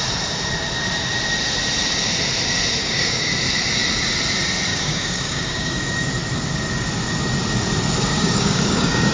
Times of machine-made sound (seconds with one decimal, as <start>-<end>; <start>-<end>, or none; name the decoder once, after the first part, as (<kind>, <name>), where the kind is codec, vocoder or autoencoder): 2.8-3.3 (codec, DAC); 4.7-5.8; 8.1-9.1